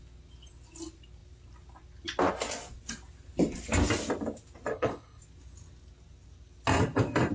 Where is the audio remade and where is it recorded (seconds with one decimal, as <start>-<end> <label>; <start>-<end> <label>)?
0.0-4.7 recorded; 4.7-5.2 remade; 5.2-7.3 recorded